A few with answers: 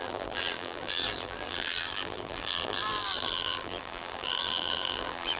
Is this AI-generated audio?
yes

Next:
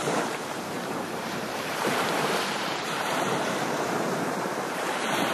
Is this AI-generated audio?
yes